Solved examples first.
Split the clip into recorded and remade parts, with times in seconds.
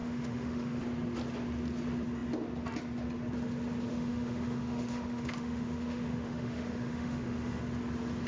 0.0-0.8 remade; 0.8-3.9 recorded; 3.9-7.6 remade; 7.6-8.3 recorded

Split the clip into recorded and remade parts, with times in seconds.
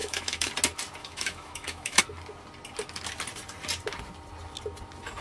0.0-0.5 remade; 0.5-1.0 recorded; 1.0-2.0 remade; 2.0-5.2 recorded